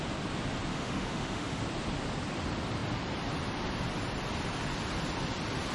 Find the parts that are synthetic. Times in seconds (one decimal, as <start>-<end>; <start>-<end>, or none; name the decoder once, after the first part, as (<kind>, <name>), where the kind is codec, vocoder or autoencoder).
0.7-1.6 (autoencoder, DAC-VAE)

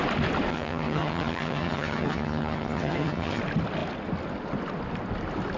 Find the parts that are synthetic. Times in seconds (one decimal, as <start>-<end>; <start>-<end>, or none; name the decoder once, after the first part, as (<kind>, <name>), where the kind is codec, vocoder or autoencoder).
0.5-3.4 (vocoder, HiFi-GAN)

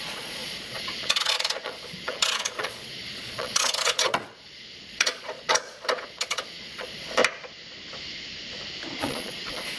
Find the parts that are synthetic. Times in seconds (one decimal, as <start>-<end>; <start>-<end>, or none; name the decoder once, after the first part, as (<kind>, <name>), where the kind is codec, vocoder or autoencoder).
0.0-7.2 (vocoder, Vocos); 9.0-9.8

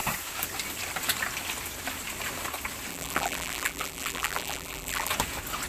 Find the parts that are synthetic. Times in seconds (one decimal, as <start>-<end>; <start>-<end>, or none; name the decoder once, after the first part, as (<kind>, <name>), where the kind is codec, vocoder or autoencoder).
2.9-5.1 (vocoder, BigVGAN v2)